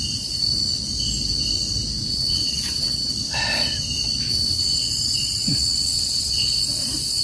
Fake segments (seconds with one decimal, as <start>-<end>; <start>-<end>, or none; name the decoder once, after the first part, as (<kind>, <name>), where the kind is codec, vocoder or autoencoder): 2.1-3.1 (vocoder, WaveNeXt); 4.3-4.9; 5.4-6.6